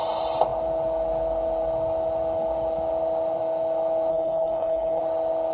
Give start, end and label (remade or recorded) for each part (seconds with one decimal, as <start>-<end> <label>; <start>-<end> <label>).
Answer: 0.0-4.1 recorded; 4.1-5.0 remade; 5.0-5.5 recorded

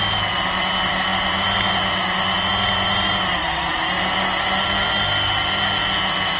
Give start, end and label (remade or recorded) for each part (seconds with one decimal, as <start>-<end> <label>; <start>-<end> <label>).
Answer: 0.0-6.4 recorded

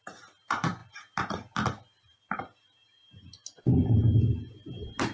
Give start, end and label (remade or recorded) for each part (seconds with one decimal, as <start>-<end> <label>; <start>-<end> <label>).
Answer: 0.0-5.1 recorded

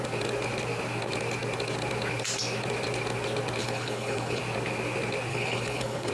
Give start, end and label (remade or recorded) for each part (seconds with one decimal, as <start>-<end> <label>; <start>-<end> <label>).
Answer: 0.0-3.6 recorded; 3.6-4.4 remade; 4.4-5.3 recorded; 5.3-6.1 remade

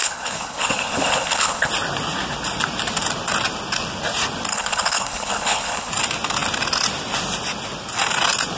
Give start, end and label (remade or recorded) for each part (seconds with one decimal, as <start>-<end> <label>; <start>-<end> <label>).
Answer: 0.0-1.7 remade; 1.7-4.5 recorded; 4.5-5.9 remade; 5.9-8.6 recorded

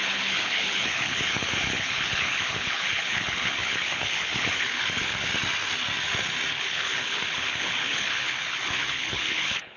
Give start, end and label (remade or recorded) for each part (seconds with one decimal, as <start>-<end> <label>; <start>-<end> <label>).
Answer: 0.0-5.3 remade; 5.3-6.5 recorded; 6.5-9.8 remade

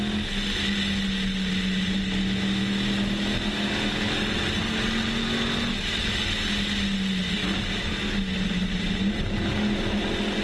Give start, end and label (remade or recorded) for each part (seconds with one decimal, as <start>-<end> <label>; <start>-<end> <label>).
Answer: 0.0-10.4 recorded

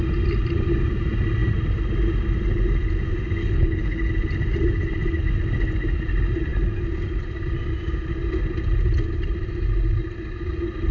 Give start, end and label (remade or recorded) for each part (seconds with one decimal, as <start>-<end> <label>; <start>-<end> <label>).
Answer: 0.0-3.4 recorded; 3.4-4.1 remade; 4.1-10.9 recorded